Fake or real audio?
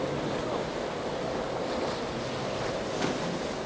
real